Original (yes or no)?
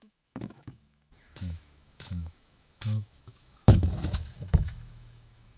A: no